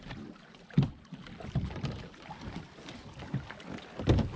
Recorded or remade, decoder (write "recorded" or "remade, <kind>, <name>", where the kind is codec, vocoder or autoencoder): recorded